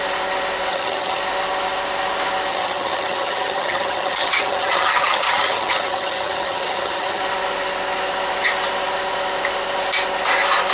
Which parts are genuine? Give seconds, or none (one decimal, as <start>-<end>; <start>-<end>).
0.0-0.7; 1.2-2.5; 7.2-10.7